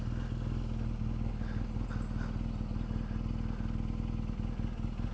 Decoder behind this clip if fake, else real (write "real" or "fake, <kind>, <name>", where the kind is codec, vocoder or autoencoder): real